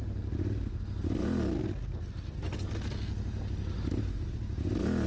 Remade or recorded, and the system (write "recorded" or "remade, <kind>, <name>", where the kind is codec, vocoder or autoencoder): recorded